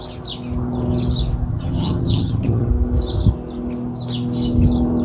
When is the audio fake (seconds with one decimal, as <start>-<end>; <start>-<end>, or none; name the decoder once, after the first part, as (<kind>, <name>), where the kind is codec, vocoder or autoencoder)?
1.5-2.7 (vocoder, HiFi-GAN)